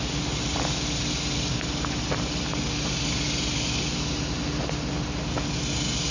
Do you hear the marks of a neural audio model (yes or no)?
no